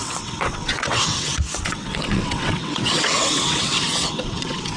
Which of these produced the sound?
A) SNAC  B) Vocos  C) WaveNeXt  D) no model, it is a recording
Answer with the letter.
C